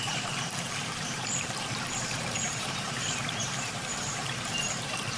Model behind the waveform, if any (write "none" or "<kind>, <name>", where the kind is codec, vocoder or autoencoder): vocoder, BigVGAN v2